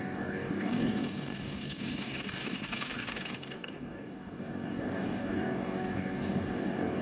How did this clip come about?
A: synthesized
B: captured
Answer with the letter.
A